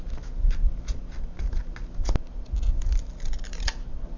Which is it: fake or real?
real